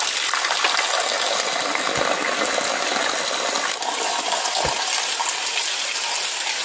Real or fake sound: real